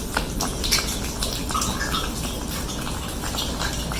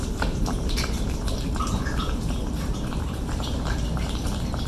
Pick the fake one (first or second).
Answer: second